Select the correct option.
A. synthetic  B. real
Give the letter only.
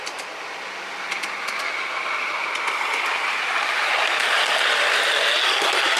B